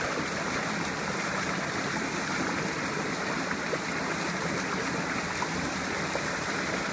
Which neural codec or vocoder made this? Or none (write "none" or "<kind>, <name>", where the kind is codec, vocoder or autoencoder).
none